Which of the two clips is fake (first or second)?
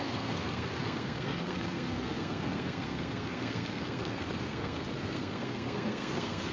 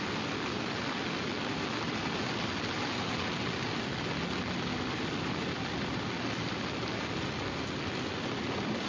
first